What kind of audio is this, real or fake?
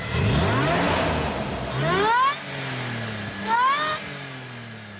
real